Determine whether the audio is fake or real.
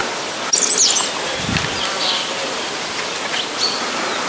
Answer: real